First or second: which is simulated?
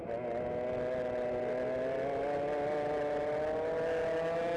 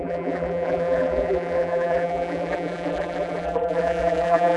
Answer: second